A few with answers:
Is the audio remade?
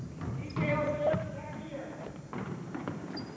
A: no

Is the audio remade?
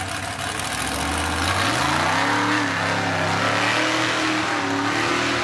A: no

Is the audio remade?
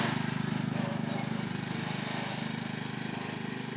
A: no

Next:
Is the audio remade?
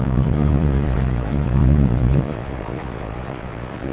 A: yes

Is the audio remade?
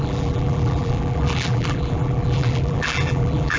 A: yes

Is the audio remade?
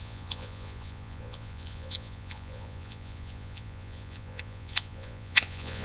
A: yes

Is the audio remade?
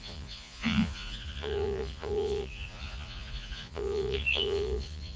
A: yes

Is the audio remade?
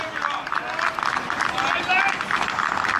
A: no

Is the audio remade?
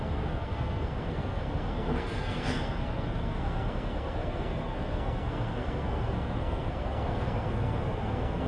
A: yes